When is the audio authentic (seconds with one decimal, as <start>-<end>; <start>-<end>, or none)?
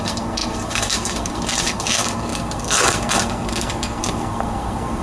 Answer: none